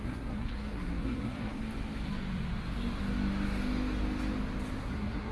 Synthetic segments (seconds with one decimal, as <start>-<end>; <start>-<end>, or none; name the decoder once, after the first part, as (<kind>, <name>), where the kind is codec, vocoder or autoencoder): 0.0-1.6 (codec, SNAC); 4.8-5.3

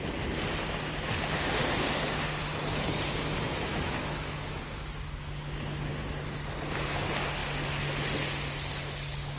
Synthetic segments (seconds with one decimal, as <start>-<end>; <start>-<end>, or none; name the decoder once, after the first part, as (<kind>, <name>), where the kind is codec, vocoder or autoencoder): 3.7-4.6 (autoencoder, DAC-VAE)